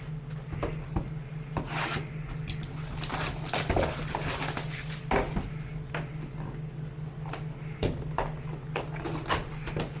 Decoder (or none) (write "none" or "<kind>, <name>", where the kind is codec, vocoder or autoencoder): none